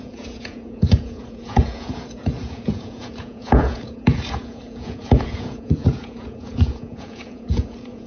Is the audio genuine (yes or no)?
no